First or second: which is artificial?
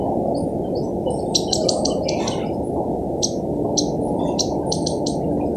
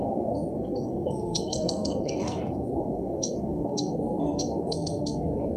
second